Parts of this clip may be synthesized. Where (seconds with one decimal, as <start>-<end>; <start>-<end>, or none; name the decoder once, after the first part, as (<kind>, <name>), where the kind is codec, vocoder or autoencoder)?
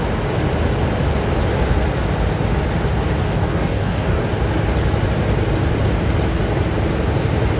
3.2-4.2 (codec, DAC)